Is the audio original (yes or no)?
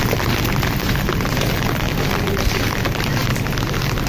yes